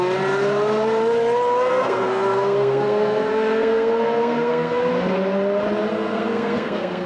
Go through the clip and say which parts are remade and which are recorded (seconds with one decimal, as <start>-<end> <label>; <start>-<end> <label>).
0.0-1.7 recorded; 1.7-4.9 remade; 4.9-5.9 recorded; 5.9-7.1 remade